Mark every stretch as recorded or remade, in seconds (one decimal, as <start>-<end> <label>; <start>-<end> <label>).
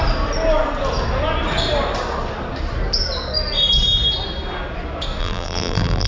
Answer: 0.0-5.2 recorded; 5.2-6.1 remade